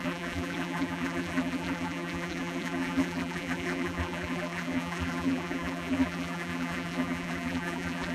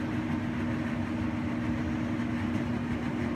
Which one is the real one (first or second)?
second